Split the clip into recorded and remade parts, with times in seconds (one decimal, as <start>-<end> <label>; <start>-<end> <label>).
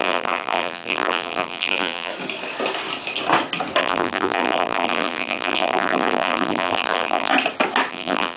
0.0-2.1 remade; 2.1-3.8 recorded; 3.8-7.3 remade; 7.3-7.9 recorded; 7.9-8.4 remade